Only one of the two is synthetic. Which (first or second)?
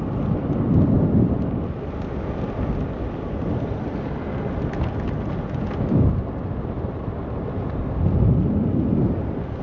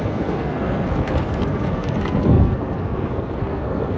second